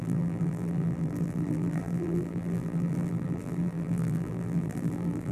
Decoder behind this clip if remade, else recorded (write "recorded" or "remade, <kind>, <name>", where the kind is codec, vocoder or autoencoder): remade, vocoder, BigVGAN v2